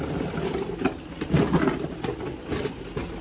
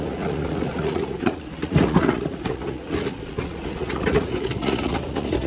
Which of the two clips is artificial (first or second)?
second